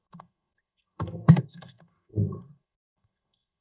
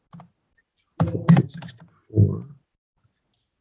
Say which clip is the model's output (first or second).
first